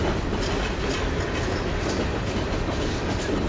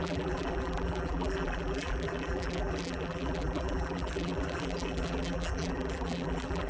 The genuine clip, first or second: first